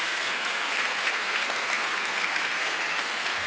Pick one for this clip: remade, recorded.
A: remade